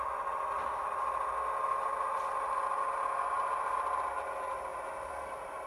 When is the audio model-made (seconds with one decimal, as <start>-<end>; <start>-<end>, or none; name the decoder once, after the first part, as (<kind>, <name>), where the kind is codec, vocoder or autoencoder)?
none